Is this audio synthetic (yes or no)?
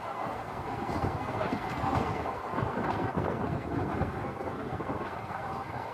yes